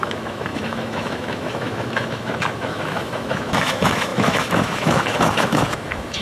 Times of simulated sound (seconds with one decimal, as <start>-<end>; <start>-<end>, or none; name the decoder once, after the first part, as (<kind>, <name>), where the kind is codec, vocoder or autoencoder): 0.0-6.2 (autoencoder, DAC-VAE)